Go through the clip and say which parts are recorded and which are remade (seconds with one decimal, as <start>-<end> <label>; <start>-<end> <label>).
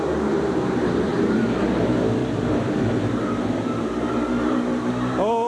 0.0-1.1 recorded; 1.1-1.8 remade; 1.8-2.2 recorded; 2.2-4.9 remade; 4.9-5.5 recorded